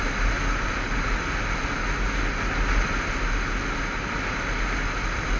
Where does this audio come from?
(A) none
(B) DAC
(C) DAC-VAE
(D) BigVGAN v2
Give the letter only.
A